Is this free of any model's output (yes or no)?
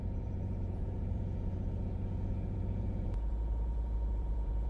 no